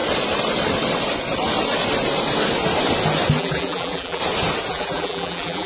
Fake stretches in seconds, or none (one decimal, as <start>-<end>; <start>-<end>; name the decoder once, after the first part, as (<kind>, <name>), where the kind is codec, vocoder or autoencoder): 3.4-4.2 (vocoder, BigVGAN v2); 4.7-5.7